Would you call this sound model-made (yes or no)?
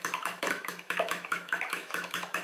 yes